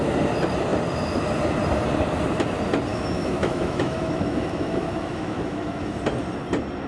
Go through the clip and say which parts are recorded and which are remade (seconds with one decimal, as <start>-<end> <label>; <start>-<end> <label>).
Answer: 0.0-2.9 recorded; 2.9-6.0 remade; 6.0-6.9 recorded